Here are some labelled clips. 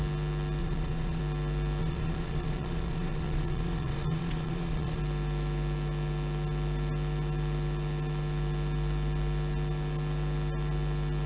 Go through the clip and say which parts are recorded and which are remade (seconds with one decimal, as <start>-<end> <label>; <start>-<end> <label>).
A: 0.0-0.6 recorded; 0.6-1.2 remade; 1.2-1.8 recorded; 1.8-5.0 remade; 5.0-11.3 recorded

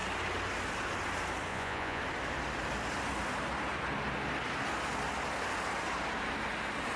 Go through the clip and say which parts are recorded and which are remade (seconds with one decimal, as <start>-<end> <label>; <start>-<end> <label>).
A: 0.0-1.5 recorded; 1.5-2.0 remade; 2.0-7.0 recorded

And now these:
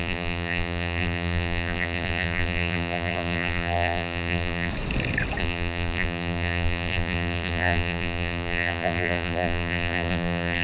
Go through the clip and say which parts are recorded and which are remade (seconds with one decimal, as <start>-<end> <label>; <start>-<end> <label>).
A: 0.0-4.7 remade; 4.7-5.4 recorded; 5.4-10.6 remade